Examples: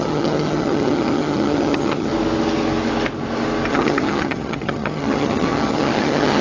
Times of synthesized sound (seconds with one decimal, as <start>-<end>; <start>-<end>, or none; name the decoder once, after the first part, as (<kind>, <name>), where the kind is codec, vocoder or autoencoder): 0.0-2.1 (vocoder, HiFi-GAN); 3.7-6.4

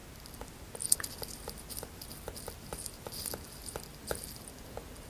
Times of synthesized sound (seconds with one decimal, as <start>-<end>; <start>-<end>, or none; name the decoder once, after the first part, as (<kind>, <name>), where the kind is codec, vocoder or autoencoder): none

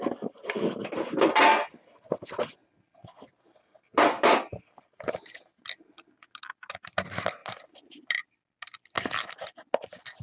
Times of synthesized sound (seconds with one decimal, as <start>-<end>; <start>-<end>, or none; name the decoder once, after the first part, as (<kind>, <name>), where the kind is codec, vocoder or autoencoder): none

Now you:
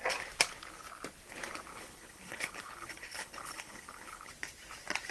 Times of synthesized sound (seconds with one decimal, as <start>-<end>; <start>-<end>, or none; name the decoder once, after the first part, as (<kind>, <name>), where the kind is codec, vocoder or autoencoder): 1.7-4.3 (codec, HILCodec)

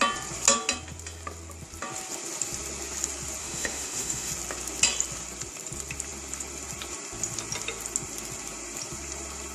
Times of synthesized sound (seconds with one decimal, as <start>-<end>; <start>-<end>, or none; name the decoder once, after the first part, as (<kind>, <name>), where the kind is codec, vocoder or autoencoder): 3.4-4.3 (autoencoder, DAC-VAE)

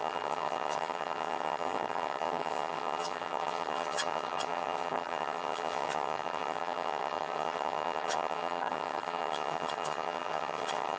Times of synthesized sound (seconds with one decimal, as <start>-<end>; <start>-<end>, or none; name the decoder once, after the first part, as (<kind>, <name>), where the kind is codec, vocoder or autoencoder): 0.0-11.0 (vocoder, HiFi-GAN)